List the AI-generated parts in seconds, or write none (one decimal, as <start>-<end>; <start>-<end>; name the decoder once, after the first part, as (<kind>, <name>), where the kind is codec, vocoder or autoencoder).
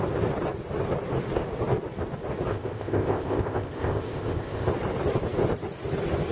2.5-4.7 (codec, ZipCodec)